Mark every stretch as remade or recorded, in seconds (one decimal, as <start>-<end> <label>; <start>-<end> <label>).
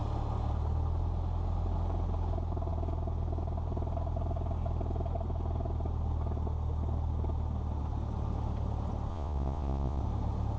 0.0-9.1 recorded; 9.1-10.0 remade; 10.0-10.6 recorded